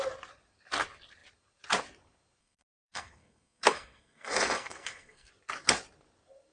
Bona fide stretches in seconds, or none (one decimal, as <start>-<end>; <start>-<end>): 0.0-2.4; 5.3-6.5